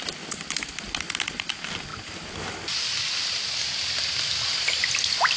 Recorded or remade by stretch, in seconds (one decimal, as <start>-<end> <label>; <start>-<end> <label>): 0.0-5.4 recorded